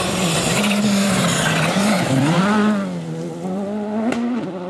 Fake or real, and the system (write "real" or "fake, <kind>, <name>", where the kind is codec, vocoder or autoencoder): fake, vocoder, BigVGAN v2